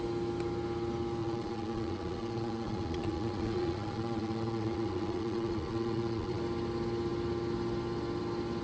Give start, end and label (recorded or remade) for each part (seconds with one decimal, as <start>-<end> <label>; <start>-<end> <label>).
0.0-1.2 recorded; 1.2-6.4 remade; 6.4-8.6 recorded